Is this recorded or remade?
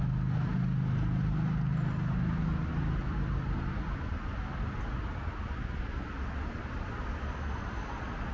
recorded